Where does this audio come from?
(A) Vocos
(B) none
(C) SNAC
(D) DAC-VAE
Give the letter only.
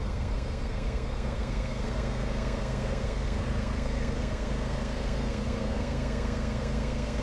C